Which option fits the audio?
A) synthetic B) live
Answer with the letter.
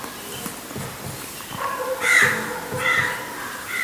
B